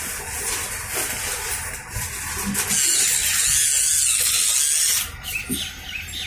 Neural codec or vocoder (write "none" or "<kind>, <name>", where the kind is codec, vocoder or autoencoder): none